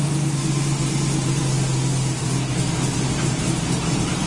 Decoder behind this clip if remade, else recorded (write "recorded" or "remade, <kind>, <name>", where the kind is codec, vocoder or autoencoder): recorded